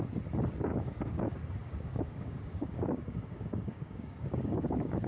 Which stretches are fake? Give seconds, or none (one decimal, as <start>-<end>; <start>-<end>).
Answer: 0.7-1.2; 1.6-5.1